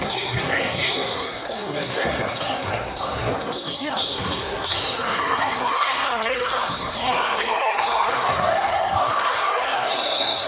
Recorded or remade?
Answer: remade